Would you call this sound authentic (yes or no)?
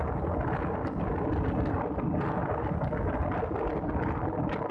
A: yes